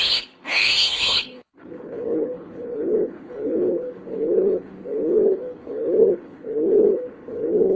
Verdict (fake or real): fake